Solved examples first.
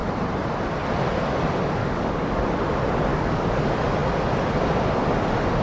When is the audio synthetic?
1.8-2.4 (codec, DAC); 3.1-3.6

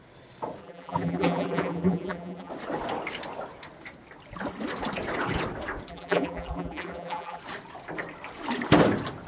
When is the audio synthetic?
0.6-2.5 (vocoder, BigVGAN v2); 5.9-7.4

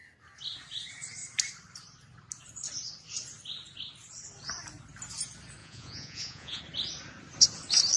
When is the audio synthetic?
5.6-6.6 (vocoder, Vocos)

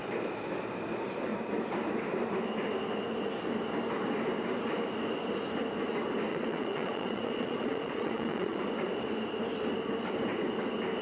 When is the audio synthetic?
6.3-8.6 (vocoder, Vocos)

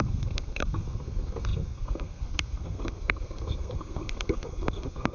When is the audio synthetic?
0.0-5.1 (codec, SNAC)

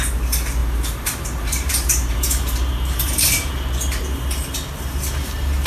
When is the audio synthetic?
0.6-3.5 (vocoder, BigVGAN v2)

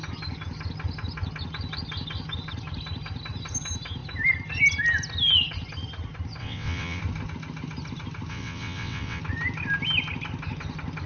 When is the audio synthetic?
6.4-7.0 (vocoder, WaveNeXt); 8.3-9.2